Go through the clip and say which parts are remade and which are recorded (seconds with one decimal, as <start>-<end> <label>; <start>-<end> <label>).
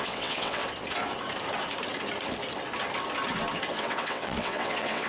0.0-0.6 remade; 0.6-3.7 recorded; 3.7-5.1 remade